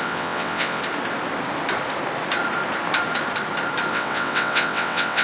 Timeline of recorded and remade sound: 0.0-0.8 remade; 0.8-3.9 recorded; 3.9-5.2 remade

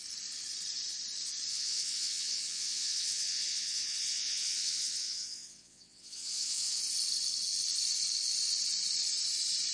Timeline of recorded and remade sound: 0.0-1.5 recorded; 1.5-6.8 remade; 6.8-9.7 recorded

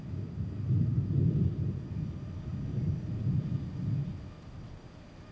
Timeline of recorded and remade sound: 0.0-5.3 recorded

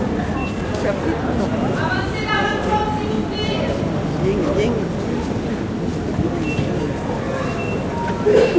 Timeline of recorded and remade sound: 0.0-8.6 recorded